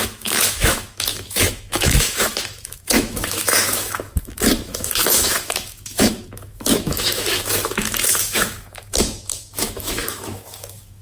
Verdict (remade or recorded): remade